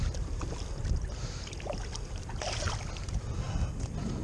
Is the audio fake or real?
real